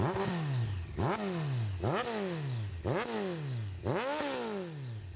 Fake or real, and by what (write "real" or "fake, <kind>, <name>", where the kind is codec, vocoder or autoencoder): real